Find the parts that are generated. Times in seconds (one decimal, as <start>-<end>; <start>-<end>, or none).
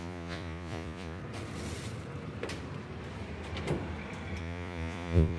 0.0-1.2; 4.4-5.4